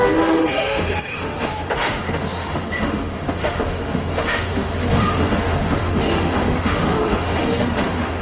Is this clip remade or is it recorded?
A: remade